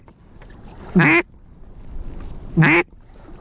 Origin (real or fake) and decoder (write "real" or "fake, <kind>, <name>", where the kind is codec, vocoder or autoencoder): real